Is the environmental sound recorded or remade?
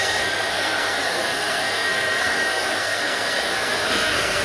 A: remade